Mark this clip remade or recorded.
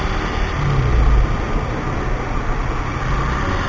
recorded